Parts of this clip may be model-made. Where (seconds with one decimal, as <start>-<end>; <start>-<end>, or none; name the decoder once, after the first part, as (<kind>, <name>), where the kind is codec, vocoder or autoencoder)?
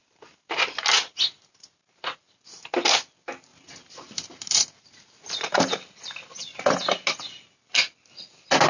0.0-2.2 (vocoder, BigVGAN v2); 3.5-5.6